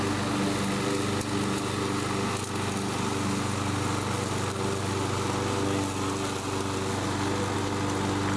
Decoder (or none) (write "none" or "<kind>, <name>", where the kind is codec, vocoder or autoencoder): none